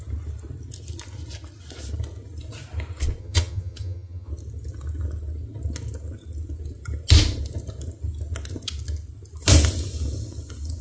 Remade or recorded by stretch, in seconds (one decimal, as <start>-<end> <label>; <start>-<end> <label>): 0.0-3.2 recorded; 3.2-4.3 remade; 4.3-10.8 recorded